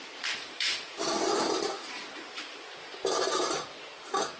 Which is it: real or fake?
real